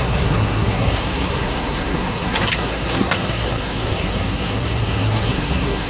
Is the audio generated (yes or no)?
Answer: yes